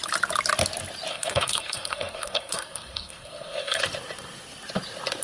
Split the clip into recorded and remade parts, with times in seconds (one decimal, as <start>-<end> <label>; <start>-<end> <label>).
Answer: 0.0-1.1 recorded; 1.1-3.8 remade; 3.8-5.2 recorded